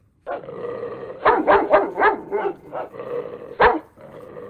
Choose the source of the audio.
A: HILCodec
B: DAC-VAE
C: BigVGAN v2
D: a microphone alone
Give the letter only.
D